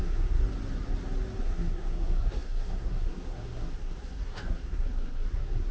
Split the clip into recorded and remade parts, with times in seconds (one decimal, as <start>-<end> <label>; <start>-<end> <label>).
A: 0.0-0.4 remade; 0.4-1.4 recorded; 1.4-5.7 remade